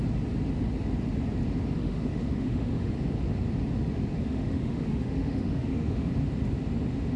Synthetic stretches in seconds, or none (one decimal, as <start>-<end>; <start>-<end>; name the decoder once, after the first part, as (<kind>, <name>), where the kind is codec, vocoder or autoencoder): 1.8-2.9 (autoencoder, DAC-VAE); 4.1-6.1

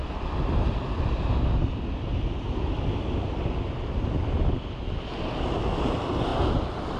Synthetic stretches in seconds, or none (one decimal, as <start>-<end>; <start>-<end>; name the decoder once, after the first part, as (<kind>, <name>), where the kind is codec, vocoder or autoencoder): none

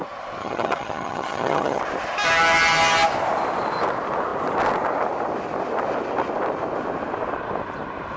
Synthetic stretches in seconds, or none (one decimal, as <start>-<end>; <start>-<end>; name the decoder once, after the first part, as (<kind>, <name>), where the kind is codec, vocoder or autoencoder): 0.4-1.8 (vocoder, HiFi-GAN)